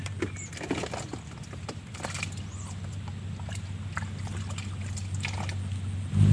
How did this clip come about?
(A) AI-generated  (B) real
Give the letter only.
B